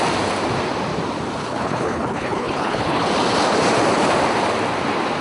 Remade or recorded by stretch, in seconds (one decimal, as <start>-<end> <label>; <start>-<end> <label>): 0.0-1.4 recorded; 1.4-3.1 remade; 3.1-5.2 recorded